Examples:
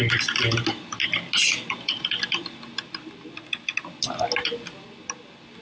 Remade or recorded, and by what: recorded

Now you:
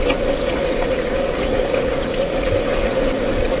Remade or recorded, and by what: remade, vocoder, Vocos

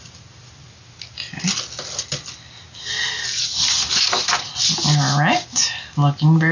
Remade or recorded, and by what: recorded